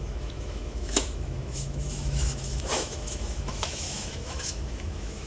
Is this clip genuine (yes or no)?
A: no